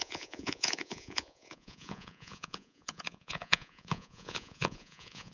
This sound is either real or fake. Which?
fake